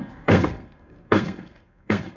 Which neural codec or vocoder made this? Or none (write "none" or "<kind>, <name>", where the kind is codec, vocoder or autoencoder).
codec, SNAC